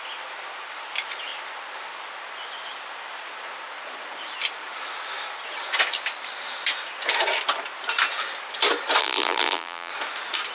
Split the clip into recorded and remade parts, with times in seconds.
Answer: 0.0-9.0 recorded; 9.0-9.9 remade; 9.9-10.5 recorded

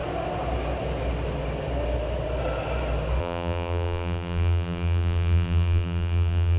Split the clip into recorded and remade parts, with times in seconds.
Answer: 0.0-3.2 recorded; 3.2-6.6 remade

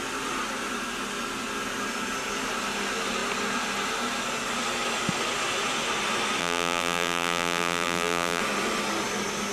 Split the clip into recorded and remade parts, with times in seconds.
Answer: 0.0-6.4 recorded; 6.4-8.4 remade; 8.4-9.5 recorded

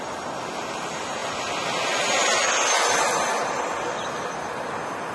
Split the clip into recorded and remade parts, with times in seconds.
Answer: 0.0-5.1 recorded

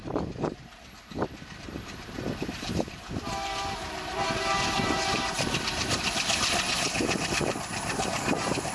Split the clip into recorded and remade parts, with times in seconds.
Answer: 0.0-0.7 remade; 0.7-1.7 recorded; 1.7-8.7 remade

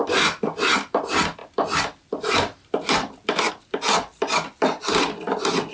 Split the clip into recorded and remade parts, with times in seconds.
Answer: 0.0-1.4 recorded; 1.4-3.5 remade; 3.5-5.7 recorded